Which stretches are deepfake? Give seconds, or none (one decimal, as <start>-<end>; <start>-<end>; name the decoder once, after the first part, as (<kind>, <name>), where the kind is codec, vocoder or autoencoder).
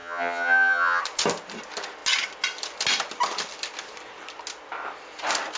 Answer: 0.0-1.0 (vocoder, HiFi-GAN)